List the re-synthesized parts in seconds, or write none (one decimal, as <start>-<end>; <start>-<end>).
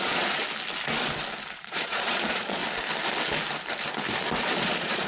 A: 0.0-0.4; 1.6-2.6; 4.4-5.1